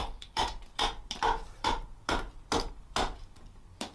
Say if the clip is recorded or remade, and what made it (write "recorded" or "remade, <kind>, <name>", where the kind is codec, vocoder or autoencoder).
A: remade, vocoder, BigVGAN v2